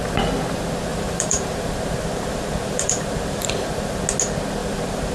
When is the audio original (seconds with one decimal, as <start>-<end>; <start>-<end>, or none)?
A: 0.0-0.9; 4.0-4.6